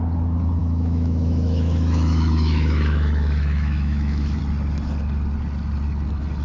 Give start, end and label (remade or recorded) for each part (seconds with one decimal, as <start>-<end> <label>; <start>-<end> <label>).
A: 0.0-0.6 recorded; 0.6-4.4 remade; 4.4-6.4 recorded